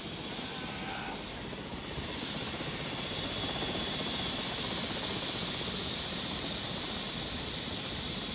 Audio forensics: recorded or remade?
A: recorded